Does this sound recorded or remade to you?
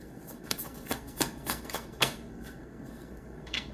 remade